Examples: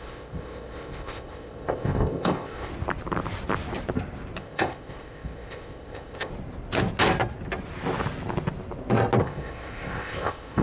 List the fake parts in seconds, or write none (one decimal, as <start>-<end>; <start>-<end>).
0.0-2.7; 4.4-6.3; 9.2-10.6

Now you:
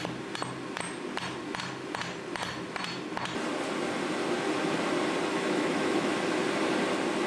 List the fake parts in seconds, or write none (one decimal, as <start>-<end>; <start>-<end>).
5.3-6.1

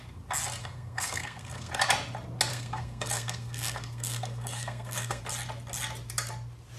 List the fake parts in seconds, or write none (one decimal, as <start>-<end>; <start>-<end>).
0.6-1.7; 2.5-5.2

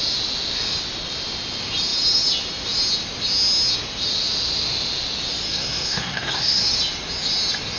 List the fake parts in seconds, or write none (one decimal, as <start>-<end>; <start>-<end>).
5.5-6.6

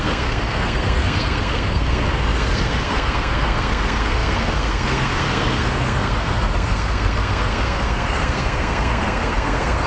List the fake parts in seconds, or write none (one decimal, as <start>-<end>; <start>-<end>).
0.0-9.9